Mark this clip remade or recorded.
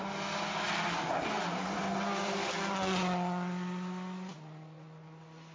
recorded